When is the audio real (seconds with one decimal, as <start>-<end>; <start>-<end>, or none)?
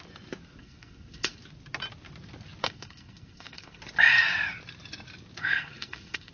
0.0-0.6; 1.4-2.6; 3.8-5.4